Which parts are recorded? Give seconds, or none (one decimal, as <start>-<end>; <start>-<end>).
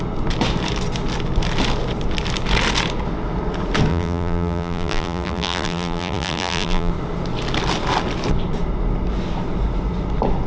0.0-3.9; 6.9-10.5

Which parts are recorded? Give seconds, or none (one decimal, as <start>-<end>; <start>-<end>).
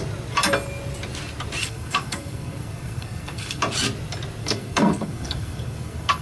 0.0-1.6; 3.6-4.4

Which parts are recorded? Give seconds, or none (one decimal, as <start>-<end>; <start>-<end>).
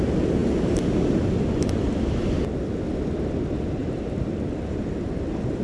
0.0-3.8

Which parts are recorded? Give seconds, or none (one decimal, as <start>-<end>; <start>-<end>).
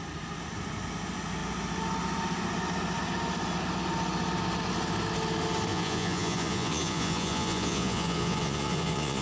0.0-5.7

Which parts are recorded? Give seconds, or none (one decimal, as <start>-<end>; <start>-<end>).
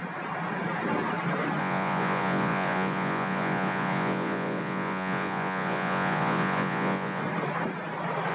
0.0-1.6; 7.2-8.3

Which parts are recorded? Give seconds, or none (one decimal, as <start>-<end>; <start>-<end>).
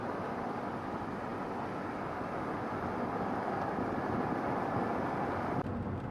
0.6-6.1